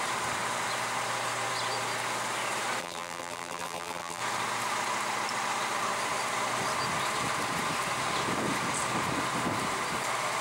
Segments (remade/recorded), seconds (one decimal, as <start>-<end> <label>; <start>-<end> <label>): 0.0-2.8 recorded; 2.8-4.2 remade; 4.2-10.4 recorded